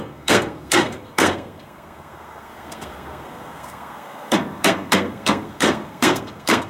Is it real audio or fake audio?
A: fake